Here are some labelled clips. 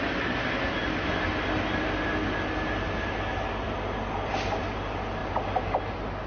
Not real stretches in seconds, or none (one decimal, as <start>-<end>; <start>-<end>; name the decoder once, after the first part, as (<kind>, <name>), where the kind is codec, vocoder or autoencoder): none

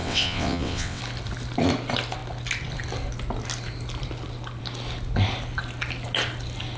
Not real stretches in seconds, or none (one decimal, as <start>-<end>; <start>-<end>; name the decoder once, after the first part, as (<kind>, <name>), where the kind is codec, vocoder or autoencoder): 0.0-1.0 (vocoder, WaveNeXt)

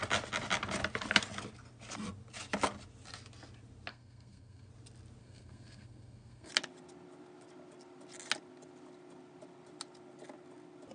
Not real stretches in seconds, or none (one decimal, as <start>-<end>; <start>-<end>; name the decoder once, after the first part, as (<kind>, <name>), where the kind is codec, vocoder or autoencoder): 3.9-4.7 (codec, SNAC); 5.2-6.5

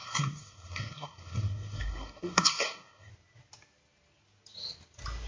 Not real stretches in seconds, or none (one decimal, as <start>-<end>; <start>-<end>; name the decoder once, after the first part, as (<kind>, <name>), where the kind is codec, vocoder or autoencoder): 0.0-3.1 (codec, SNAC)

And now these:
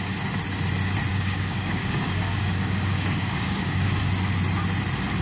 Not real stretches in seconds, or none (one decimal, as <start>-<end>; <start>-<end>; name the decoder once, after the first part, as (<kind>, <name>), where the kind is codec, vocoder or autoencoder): 1.1-4.0 (codec, DAC)

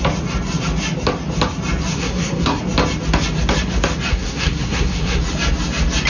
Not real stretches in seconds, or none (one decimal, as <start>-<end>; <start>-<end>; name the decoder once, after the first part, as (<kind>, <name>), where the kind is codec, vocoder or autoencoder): 1.9-2.6 (codec, SNAC); 4.1-5.2